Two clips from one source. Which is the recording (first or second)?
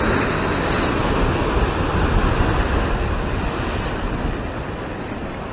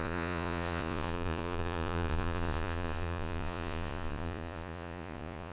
first